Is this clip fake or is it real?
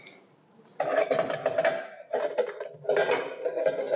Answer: fake